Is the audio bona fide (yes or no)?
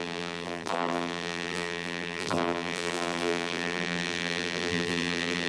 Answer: no